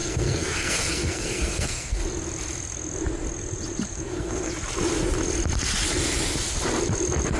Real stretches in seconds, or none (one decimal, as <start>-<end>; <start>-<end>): 2.0-3.9; 4.5-7.4